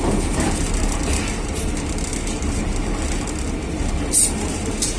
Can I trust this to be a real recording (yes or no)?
yes